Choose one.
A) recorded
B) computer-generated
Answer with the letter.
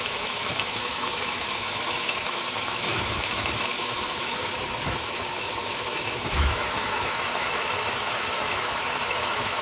B